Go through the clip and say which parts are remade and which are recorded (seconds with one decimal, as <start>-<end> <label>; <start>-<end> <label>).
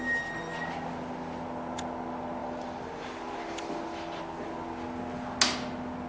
0.0-2.4 recorded; 2.4-4.2 remade; 4.2-6.1 recorded